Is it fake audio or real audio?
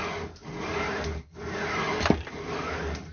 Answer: real